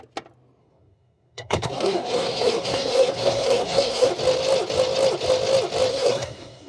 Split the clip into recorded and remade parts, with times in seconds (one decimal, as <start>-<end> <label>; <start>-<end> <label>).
0.0-0.6 recorded; 0.6-4.1 remade; 4.1-5.9 recorded; 5.9-6.7 remade